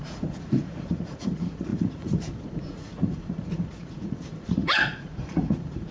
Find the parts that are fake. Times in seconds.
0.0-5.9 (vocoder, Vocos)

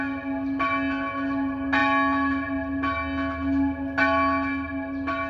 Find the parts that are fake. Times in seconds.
none

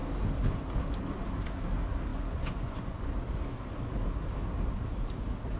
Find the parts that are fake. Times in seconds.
2.1-3.1 (vocoder, Vocos)

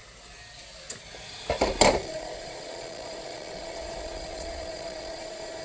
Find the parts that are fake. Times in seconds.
2.0-5.6 (vocoder, Vocos)

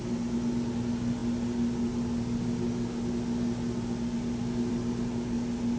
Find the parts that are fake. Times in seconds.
none

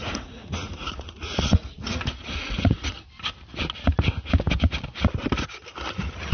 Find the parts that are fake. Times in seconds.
0.0-2.9 (vocoder, Vocos)

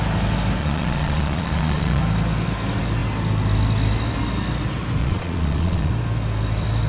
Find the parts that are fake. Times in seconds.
0.6-2.0 (vocoder, Vocos); 5.0-5.9

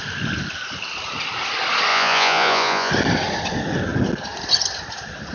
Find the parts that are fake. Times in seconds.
1.9-2.9 (vocoder, Vocos)